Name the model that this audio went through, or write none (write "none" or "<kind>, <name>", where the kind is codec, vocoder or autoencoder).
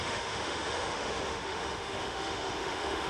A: autoencoder, DAC-VAE